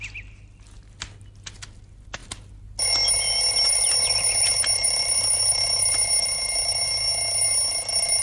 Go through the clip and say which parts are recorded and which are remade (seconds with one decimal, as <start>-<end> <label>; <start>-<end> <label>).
0.0-3.7 recorded; 3.7-6.1 remade; 6.1-8.2 recorded